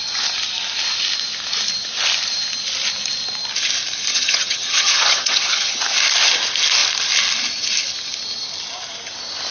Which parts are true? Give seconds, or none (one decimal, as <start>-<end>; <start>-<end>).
0.0-4.1; 5.8-9.5